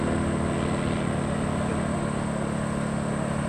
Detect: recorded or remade recorded